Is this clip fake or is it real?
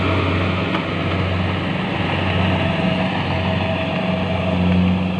real